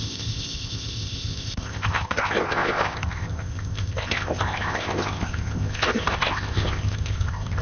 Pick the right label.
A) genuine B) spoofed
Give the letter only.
B